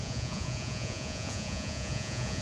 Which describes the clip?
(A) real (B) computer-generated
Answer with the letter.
B